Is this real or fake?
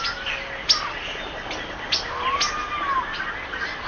real